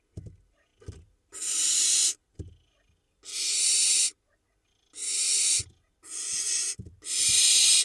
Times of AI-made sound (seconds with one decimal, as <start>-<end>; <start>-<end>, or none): none